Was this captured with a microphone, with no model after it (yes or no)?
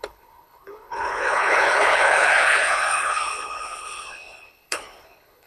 no